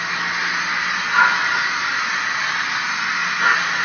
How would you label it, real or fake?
real